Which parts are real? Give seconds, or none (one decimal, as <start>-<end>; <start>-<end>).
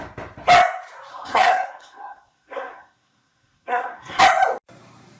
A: 0.0-1.1; 4.2-5.2